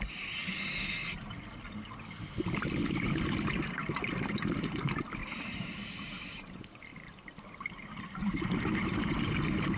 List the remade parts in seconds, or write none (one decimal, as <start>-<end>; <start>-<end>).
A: 5.2-5.9; 6.9-9.0